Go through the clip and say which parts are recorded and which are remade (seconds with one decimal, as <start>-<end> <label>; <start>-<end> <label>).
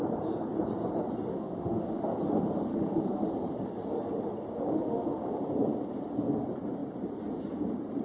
0.0-1.3 recorded; 1.3-2.0 remade; 2.0-2.7 recorded; 2.7-3.3 remade; 3.3-4.5 recorded; 4.5-5.4 remade; 5.4-8.0 recorded